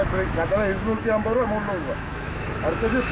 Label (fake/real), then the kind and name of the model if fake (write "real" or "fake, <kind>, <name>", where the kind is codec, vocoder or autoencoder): fake, autoencoder, DAC-VAE